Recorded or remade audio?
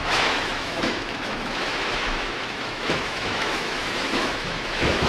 remade